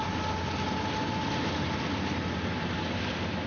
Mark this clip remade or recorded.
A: recorded